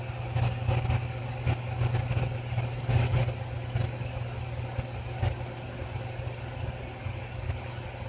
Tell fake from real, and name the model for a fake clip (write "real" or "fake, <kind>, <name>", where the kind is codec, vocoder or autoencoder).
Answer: real